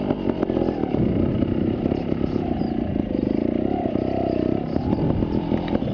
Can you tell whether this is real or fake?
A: real